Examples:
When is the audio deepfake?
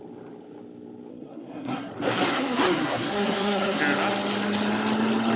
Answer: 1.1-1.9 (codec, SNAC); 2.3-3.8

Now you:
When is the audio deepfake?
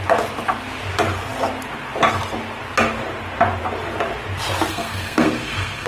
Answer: 4.7-5.9 (codec, SNAC)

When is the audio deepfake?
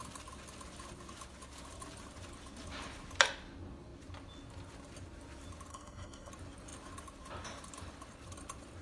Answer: 5.7-6.3 (codec, SNAC)